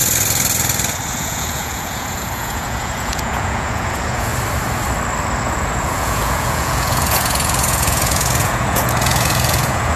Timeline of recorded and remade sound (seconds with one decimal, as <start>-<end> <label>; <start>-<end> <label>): 0.0-1.1 recorded; 1.1-4.3 remade; 4.3-5.4 recorded; 5.4-10.0 remade